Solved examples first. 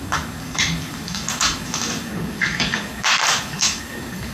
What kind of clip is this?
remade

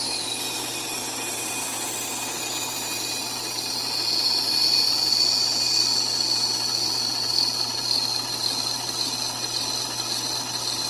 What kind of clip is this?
recorded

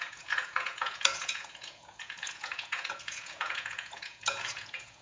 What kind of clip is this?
remade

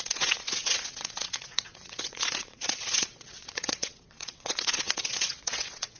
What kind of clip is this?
remade